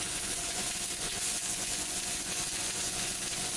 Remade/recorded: remade